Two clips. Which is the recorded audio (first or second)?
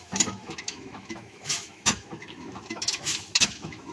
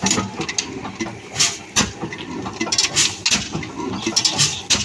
second